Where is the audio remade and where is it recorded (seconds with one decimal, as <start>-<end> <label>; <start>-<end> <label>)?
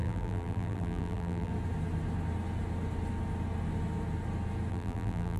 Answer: 0.0-1.5 remade; 1.5-4.7 recorded; 4.7-5.4 remade